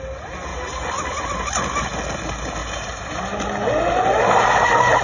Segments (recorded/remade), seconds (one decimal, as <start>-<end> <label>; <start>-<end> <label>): 0.0-0.5 recorded; 0.5-1.2 remade; 1.2-2.6 recorded; 2.6-3.2 remade; 3.2-5.0 recorded